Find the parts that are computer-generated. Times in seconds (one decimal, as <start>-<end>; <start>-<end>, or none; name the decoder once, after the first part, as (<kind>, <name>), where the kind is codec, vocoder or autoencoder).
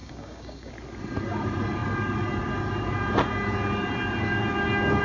0.0-0.7 (codec, DAC)